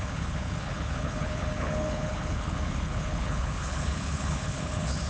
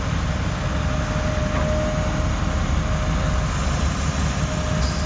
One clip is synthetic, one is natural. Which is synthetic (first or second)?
first